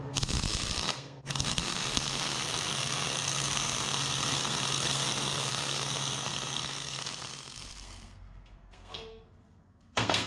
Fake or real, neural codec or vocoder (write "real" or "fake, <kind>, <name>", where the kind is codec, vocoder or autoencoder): fake, codec, SNAC